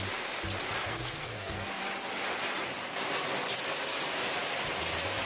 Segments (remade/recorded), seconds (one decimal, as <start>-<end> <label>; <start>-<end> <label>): 0.0-0.8 recorded; 0.8-1.8 remade; 1.8-5.3 recorded